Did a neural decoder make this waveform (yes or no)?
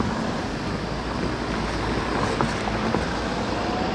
no